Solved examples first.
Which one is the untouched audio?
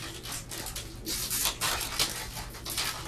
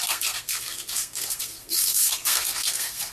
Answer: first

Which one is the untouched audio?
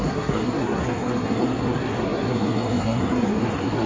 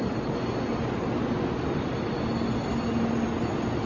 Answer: second